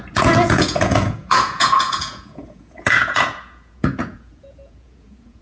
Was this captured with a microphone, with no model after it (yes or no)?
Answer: no